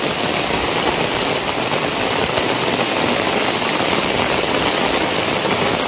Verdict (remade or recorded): recorded